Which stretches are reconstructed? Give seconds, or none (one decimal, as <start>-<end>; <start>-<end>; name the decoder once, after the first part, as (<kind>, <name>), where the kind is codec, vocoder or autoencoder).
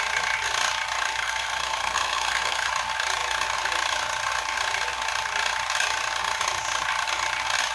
1.2-2.7 (codec, SNAC)